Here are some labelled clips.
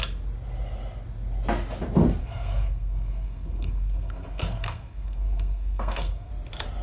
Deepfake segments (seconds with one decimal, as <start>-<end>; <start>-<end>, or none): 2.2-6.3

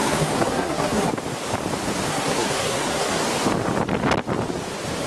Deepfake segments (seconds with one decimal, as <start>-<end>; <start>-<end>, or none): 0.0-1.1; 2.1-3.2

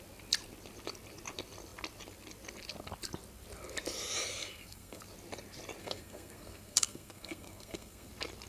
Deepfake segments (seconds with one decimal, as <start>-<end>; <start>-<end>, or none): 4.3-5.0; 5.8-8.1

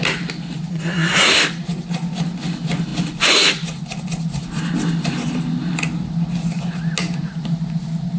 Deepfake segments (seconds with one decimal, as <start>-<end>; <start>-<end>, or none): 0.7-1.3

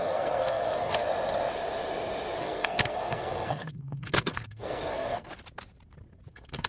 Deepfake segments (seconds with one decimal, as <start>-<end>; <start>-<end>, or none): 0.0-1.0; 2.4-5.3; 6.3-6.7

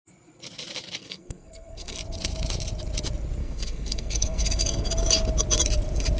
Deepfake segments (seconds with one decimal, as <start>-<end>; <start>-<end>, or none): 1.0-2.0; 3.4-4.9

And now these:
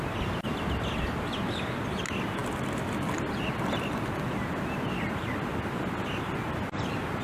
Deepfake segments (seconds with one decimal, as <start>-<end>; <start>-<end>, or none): none

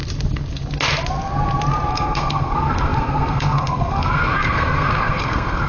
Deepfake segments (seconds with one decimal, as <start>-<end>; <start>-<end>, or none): 1.9-5.7